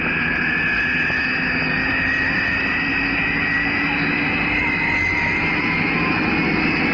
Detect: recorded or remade recorded